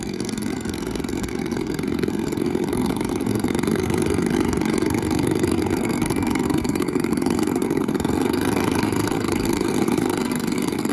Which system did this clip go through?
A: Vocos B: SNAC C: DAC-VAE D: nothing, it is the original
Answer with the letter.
B